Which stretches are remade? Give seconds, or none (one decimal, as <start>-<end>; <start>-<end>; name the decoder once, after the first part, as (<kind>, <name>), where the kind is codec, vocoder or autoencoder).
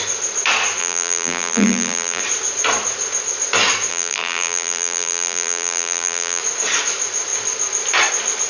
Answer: 0.8-2.2 (vocoder, BigVGAN v2); 3.9-6.4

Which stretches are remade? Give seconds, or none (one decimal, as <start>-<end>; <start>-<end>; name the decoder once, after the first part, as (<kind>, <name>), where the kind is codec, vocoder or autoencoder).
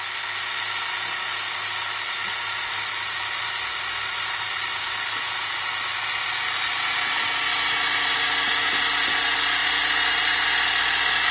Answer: none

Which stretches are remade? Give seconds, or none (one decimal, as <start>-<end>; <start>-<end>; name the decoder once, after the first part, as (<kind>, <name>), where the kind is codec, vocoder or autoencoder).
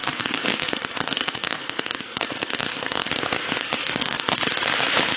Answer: 0.0-3.1 (codec, SNAC); 3.6-4.4